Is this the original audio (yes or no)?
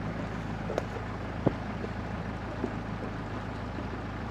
yes